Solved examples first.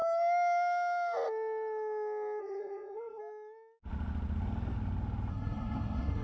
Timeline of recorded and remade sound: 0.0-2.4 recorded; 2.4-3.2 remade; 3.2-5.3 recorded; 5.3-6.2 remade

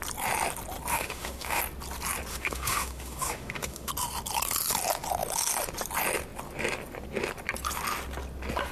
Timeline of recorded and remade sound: 0.0-0.9 recorded; 0.9-1.6 remade; 1.6-2.3 recorded; 2.3-3.9 remade; 3.9-8.7 recorded

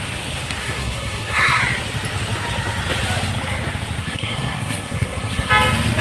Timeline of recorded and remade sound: 0.0-0.6 recorded; 0.6-1.6 remade; 1.6-4.0 recorded; 4.0-5.5 remade; 5.5-6.0 recorded

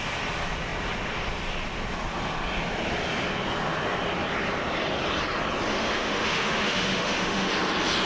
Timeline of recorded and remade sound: 0.0-5.7 recorded; 5.7-7.5 remade; 7.5-8.1 recorded

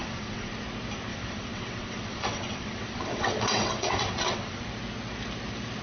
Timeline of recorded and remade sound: 0.0-0.5 remade; 0.5-1.1 recorded; 1.1-4.6 remade; 4.6-5.8 recorded